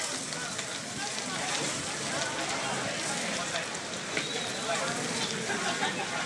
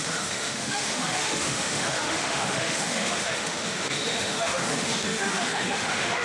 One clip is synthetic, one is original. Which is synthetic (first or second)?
second